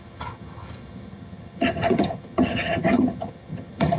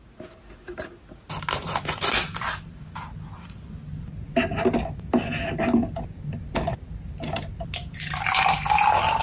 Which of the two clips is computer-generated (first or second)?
first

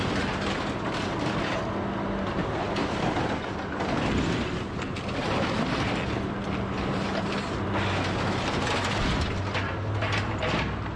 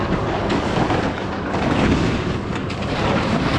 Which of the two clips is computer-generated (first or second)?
second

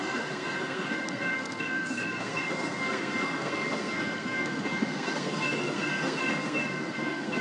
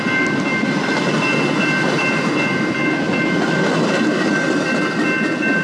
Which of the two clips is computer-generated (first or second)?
first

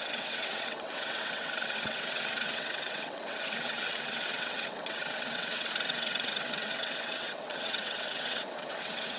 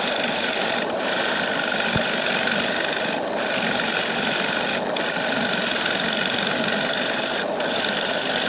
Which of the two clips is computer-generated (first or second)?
first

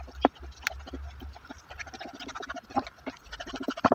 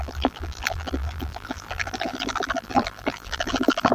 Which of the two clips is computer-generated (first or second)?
second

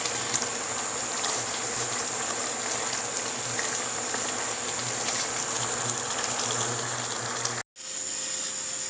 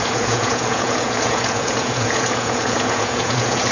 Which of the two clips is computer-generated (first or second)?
second